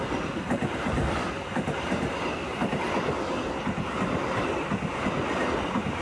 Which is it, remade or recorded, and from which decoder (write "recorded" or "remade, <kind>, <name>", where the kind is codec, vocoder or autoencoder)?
recorded